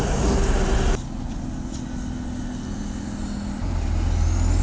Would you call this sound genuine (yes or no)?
yes